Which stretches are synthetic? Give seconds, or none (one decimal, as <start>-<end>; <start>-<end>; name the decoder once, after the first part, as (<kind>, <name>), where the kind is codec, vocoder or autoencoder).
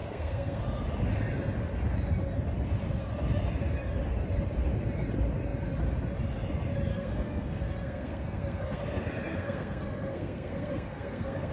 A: 0.0-0.6 (codec, SNAC); 6.9-8.8; 9.3-11.5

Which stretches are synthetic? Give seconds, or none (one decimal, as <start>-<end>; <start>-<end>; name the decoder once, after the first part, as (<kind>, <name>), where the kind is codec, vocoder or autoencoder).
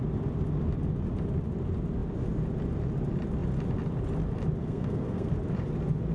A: 4.6-5.3 (codec, SNAC)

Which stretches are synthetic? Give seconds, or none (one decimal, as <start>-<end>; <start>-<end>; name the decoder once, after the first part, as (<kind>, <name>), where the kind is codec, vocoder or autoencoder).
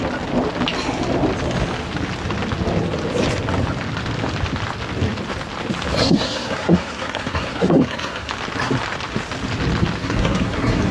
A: 6.0-8.3 (codec, SNAC); 10.0-10.9